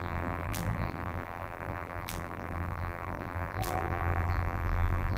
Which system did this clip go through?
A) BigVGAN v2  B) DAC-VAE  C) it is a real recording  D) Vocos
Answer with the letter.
A